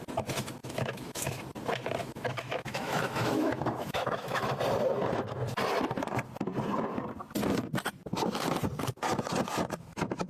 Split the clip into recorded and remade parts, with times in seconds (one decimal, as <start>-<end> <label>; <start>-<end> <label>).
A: 0.0-0.6 recorded; 0.6-1.4 remade; 1.4-2.0 recorded; 2.0-4.5 remade; 4.5-10.3 recorded